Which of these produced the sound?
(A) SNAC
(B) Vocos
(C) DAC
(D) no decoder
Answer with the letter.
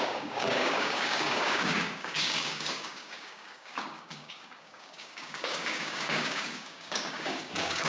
C